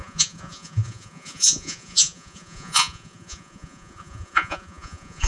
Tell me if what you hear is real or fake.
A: fake